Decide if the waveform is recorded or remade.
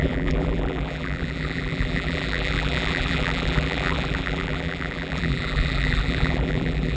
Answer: remade